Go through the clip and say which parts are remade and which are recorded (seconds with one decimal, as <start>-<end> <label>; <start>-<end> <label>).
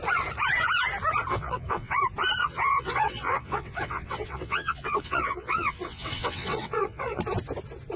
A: 0.0-1.3 recorded; 1.3-2.0 remade; 2.0-2.4 recorded; 2.4-7.2 remade; 7.2-8.0 recorded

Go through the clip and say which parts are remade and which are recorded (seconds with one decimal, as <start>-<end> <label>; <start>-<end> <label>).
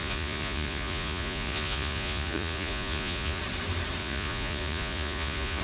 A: 0.0-3.4 remade; 3.4-4.0 recorded; 4.0-5.6 remade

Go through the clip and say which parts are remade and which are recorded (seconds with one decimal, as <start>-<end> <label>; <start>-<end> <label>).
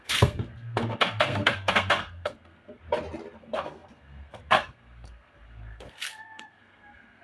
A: 0.0-2.8 remade; 2.8-3.4 recorded; 3.4-7.2 remade